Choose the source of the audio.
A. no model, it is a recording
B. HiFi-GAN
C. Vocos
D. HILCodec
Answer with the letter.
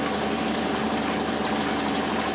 A